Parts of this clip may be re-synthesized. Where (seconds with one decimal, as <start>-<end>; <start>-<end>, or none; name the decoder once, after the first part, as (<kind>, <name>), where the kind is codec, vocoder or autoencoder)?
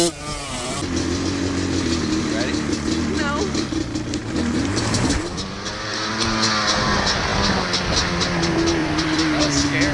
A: 4.2-5.7 (vocoder, BigVGAN v2); 8.8-9.4